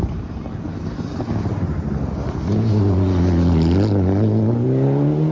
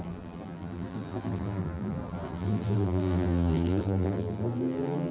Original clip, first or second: first